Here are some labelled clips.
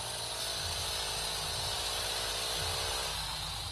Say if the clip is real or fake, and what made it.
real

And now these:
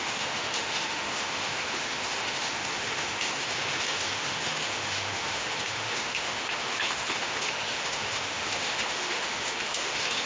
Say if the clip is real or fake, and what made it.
fake, autoencoder, DAC-VAE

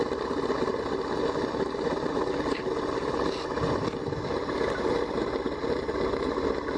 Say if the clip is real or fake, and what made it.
real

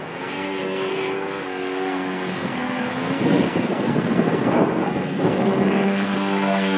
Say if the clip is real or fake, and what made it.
fake, codec, SNAC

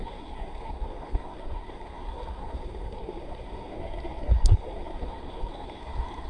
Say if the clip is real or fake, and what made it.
fake, codec, SNAC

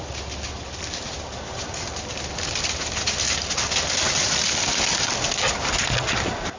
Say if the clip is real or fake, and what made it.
real